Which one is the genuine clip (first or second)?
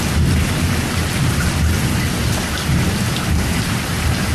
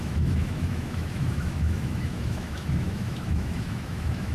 first